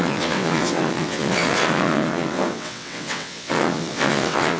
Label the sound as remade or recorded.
remade